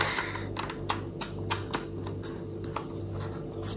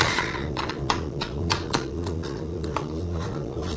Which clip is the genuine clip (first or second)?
first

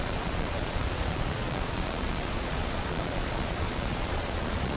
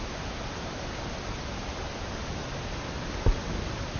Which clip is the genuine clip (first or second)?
second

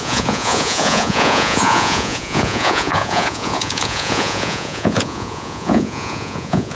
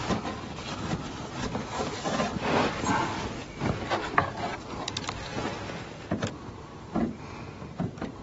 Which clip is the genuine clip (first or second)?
second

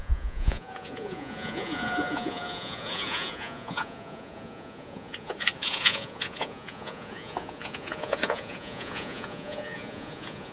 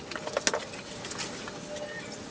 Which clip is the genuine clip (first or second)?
second